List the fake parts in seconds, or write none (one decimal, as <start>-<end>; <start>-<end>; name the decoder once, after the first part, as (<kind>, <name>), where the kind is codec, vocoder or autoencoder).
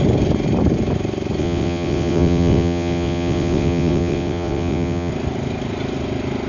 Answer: 1.4-5.1 (vocoder, WaveNeXt)